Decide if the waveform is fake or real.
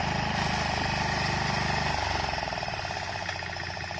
real